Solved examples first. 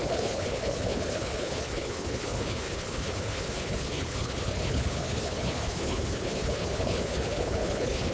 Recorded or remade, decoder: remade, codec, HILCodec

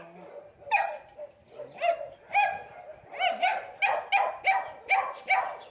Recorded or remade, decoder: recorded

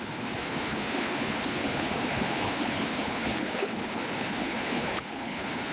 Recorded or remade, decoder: remade, codec, HILCodec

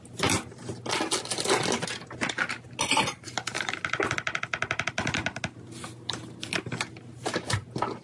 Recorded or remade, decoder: recorded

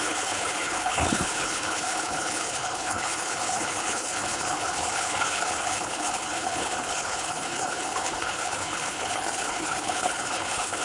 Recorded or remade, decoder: remade, codec, HILCodec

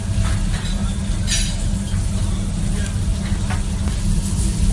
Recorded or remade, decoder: recorded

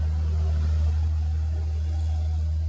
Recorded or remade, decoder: recorded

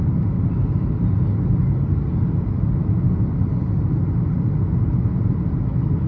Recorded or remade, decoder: recorded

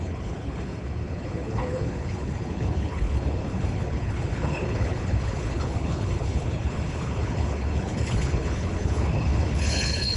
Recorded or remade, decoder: remade, codec, HILCodec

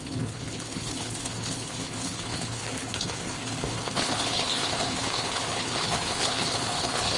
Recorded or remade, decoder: remade, codec, HILCodec